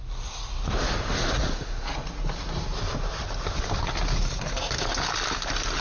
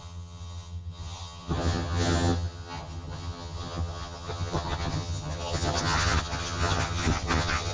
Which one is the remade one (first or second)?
second